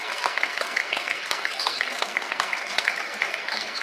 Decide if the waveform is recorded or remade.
remade